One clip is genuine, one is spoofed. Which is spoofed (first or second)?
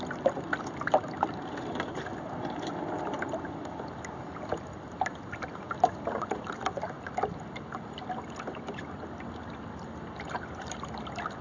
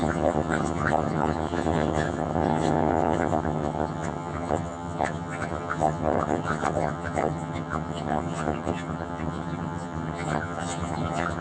second